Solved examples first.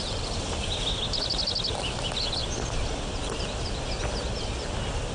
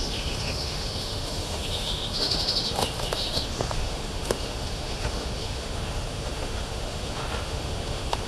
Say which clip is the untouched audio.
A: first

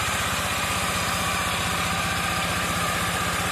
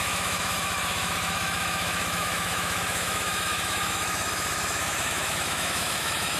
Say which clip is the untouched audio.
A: first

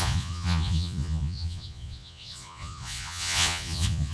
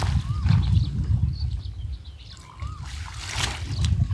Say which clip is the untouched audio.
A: second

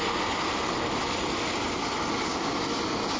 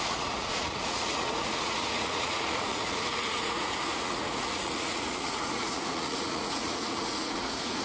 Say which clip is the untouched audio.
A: first